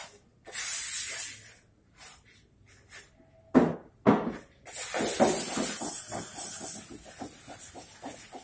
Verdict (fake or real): real